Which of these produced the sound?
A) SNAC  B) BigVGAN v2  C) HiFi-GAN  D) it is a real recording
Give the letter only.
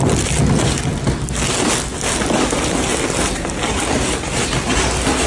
D